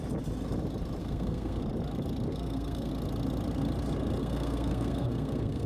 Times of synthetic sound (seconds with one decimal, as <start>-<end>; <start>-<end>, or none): 1.0-1.6; 2.3-2.9; 4.2-5.7